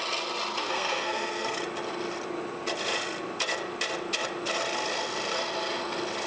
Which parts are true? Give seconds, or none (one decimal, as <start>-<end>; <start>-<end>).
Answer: 0.0-0.6; 1.6-6.3